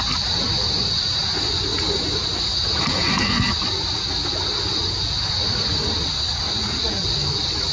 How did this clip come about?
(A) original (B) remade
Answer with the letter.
A